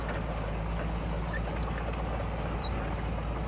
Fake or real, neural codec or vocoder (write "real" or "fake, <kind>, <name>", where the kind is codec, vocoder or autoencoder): real